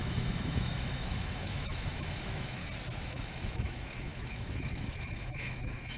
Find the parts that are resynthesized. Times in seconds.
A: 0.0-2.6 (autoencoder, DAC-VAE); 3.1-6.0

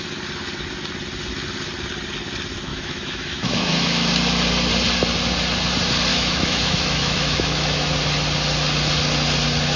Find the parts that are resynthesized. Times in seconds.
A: 2.7-4.1 (autoencoder, DAC-VAE); 6.1-7.9

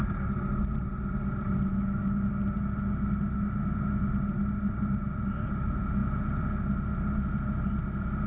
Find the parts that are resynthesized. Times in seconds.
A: 1.7-2.3 (autoencoder, DAC-VAE)

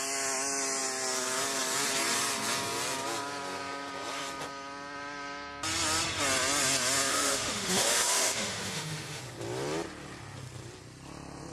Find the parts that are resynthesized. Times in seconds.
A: 7.1-9.2 (autoencoder, DAC-VAE)

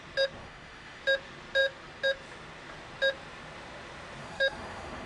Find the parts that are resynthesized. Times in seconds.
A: 0.4-1.0 (autoencoder, DAC-VAE); 4.2-5.1

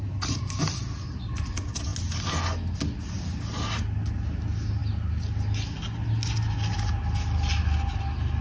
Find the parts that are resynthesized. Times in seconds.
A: none

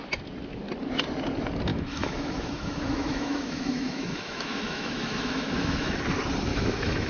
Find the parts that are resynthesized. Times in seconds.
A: 1.7-6.0 (autoencoder, DAC-VAE); 6.5-7.1

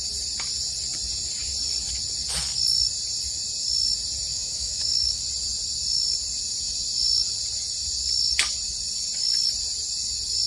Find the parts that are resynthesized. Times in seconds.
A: 4.3-5.2 (autoencoder, DAC-VAE)